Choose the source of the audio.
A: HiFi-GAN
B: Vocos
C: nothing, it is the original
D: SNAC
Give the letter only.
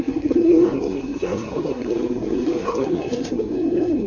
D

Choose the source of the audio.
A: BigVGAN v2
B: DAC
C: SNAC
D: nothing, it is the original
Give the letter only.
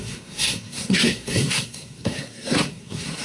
C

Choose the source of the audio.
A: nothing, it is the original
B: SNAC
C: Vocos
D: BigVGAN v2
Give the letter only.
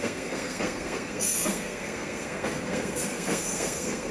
B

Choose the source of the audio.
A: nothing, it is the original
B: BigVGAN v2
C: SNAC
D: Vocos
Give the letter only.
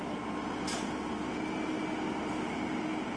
A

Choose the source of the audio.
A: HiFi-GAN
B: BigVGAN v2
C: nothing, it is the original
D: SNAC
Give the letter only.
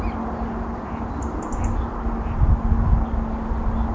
C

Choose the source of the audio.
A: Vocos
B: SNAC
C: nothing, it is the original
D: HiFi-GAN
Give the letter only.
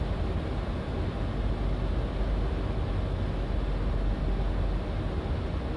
C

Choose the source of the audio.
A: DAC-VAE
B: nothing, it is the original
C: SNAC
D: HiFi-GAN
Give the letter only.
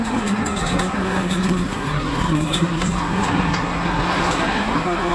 C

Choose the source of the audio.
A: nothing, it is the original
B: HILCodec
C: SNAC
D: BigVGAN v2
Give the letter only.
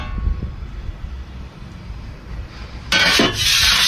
A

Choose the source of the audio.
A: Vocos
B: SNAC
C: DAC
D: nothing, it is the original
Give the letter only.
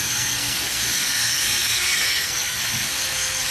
B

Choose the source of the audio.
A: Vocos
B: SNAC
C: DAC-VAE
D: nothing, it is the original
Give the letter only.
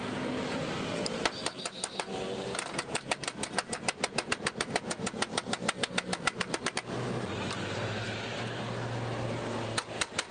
D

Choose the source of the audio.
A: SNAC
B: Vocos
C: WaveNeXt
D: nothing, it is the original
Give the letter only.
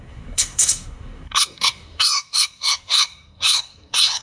A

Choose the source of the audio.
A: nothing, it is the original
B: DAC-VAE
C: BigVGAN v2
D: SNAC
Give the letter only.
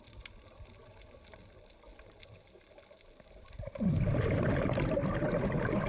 A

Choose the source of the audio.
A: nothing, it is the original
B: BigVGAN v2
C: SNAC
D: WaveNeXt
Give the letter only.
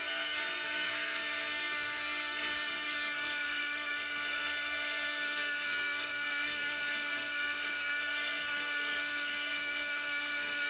C